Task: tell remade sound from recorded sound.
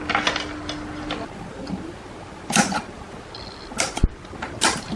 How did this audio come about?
recorded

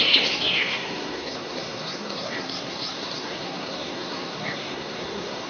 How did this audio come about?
remade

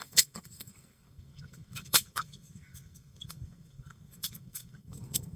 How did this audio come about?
remade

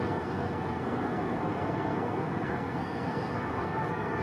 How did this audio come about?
remade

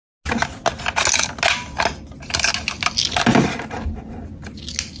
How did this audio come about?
recorded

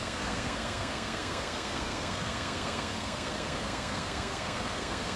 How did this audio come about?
remade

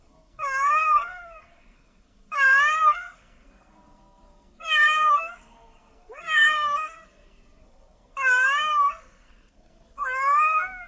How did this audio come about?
remade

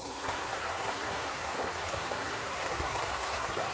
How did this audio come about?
remade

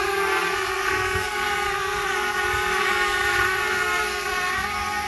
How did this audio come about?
remade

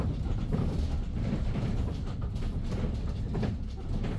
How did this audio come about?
recorded